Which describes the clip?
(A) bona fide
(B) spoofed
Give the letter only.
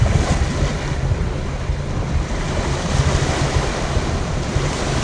A